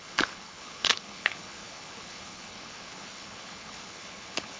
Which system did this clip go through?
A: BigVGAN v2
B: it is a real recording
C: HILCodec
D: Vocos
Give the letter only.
C